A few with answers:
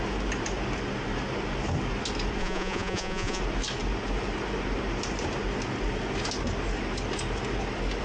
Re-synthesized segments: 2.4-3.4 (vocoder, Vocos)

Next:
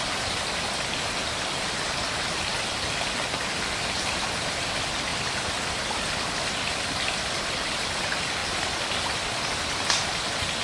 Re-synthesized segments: none

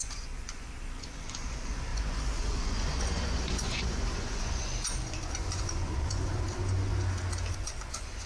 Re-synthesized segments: 0.0-6.9 (vocoder, Vocos); 7.5-8.3

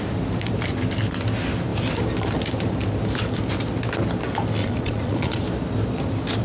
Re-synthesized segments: 4.6-5.4 (vocoder, Vocos)

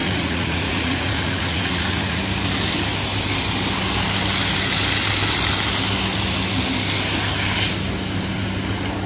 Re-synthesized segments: 0.0-2.2 (vocoder, Vocos)